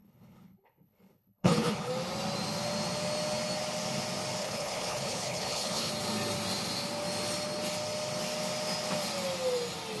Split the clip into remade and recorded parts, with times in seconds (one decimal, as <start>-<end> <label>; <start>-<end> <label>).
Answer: 0.0-1.9 remade; 1.9-4.4 recorded; 4.4-5.9 remade; 5.9-10.0 recorded